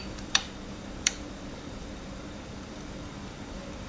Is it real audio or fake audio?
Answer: fake